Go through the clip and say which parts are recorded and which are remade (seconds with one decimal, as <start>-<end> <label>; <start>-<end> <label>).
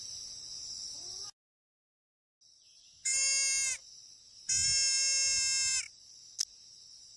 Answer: 0.0-7.2 recorded